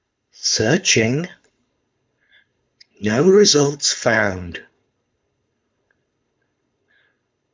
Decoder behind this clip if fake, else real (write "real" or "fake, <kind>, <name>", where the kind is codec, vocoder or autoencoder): fake, codec, HILCodec